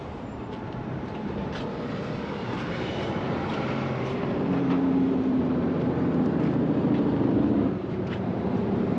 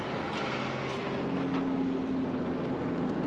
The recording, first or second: second